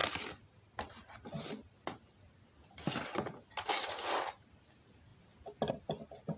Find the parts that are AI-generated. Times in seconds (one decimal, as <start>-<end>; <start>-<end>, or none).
none